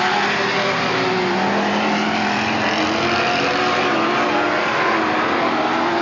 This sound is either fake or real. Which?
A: real